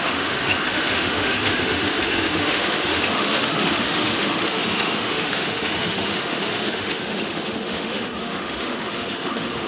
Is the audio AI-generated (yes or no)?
yes